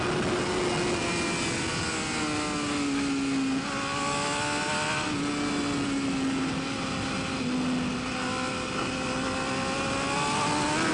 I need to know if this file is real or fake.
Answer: real